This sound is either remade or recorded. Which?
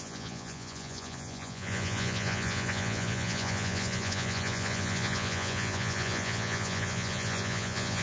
remade